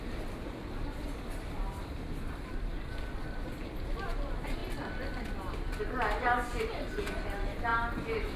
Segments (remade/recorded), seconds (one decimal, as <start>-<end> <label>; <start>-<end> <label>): 0.0-4.6 remade; 4.6-5.8 recorded; 5.8-7.7 remade; 7.7-8.4 recorded